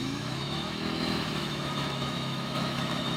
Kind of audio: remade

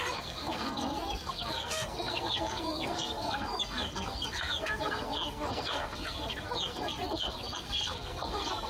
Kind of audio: remade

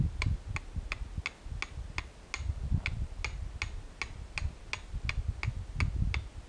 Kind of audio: recorded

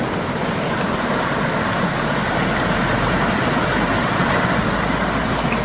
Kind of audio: recorded